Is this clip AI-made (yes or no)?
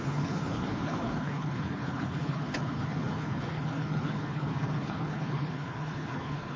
yes